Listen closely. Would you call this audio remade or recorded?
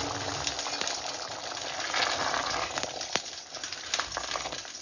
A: recorded